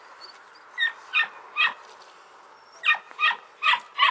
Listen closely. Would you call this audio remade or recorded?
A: recorded